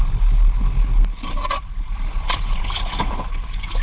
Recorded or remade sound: recorded